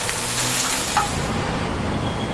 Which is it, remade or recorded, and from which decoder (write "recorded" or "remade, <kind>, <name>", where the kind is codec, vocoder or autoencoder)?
recorded